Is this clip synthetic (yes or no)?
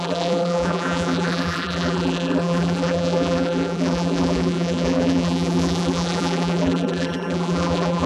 yes